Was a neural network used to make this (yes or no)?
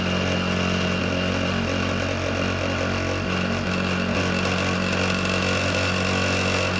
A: no